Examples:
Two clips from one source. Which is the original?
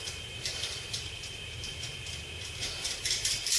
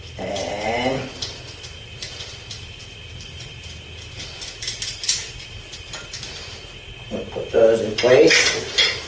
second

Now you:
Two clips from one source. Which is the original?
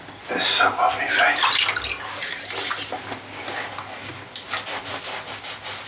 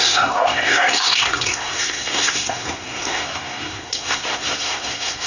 first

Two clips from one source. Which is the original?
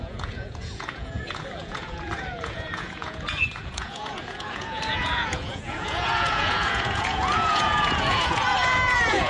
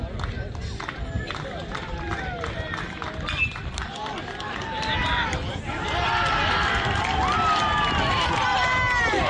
second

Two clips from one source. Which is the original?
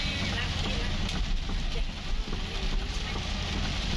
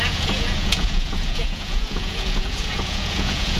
first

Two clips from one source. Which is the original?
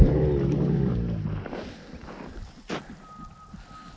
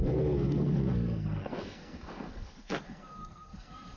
first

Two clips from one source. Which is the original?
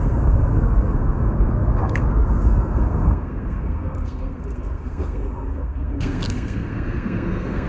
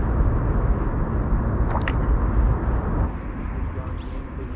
second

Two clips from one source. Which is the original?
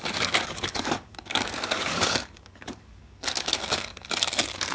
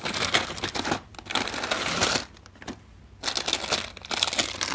second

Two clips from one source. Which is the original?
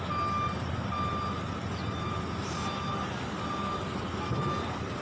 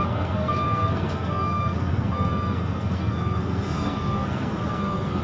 first